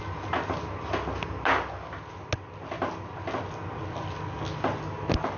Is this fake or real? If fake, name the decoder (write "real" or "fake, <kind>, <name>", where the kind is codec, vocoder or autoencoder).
real